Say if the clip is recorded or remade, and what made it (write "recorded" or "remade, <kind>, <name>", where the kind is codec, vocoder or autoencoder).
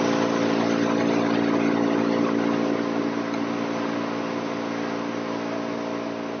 recorded